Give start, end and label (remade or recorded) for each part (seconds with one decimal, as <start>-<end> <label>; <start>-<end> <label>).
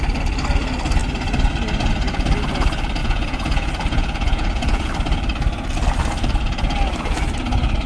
0.0-3.0 recorded; 3.0-4.9 remade; 4.9-7.9 recorded